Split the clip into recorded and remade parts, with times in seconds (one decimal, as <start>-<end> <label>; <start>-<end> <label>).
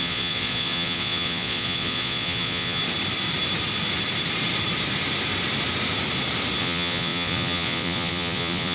0.0-2.8 remade; 2.8-6.6 recorded; 6.6-8.7 remade